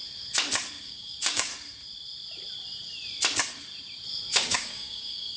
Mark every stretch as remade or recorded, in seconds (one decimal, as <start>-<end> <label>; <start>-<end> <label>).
0.0-0.8 recorded; 0.8-1.5 remade; 1.5-4.3 recorded; 4.3-5.4 remade